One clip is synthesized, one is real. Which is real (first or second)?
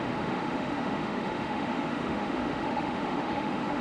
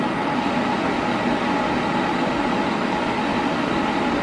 second